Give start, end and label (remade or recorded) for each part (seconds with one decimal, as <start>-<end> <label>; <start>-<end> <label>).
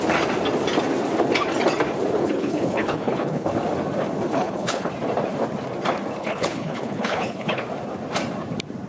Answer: 0.0-2.2 recorded; 2.2-3.5 remade; 3.5-4.3 recorded; 4.3-4.9 remade; 4.9-6.2 recorded; 6.2-7.6 remade; 7.6-8.9 recorded